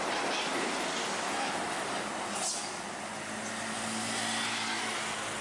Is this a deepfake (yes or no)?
no